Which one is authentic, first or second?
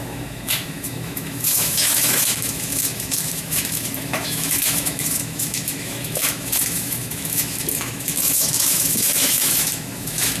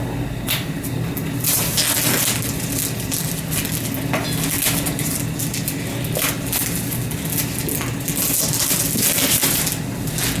second